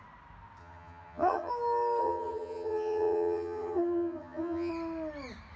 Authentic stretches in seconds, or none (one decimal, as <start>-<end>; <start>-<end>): 0.0-0.6; 1.5-2.0; 4.7-5.6